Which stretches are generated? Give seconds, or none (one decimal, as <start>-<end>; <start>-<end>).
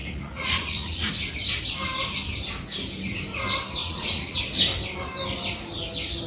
0.0-1.1; 3.8-4.4